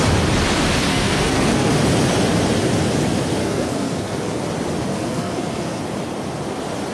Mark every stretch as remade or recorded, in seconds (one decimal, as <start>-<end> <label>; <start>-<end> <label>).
0.0-0.9 recorded; 0.9-1.7 remade; 1.7-3.4 recorded; 3.4-4.4 remade; 4.4-4.9 recorded; 4.9-5.8 remade; 5.8-6.9 recorded